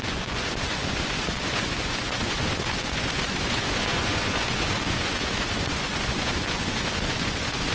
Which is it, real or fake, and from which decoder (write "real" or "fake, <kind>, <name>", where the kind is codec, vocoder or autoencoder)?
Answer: fake, vocoder, Vocos